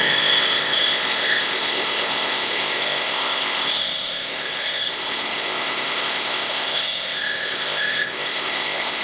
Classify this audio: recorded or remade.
remade